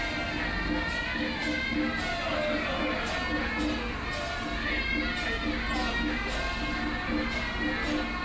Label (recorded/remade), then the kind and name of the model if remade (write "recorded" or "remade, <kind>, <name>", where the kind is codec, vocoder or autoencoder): recorded